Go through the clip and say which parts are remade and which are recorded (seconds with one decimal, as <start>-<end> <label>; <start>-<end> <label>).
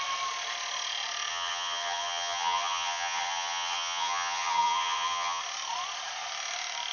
0.0-1.3 recorded; 1.3-5.4 remade; 5.4-6.9 recorded